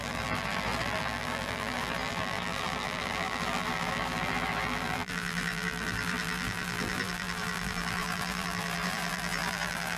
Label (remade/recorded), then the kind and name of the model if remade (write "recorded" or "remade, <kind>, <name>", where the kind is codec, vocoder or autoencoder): remade, vocoder, BigVGAN v2